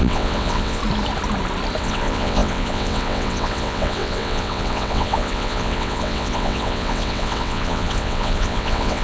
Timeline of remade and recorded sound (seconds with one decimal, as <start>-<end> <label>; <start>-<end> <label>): 0.0-0.8 remade; 0.8-1.8 recorded; 1.8-9.0 remade